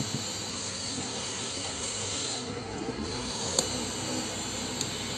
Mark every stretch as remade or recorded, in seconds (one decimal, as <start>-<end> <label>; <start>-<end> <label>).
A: 0.0-0.5 recorded; 0.5-3.6 remade; 3.6-5.2 recorded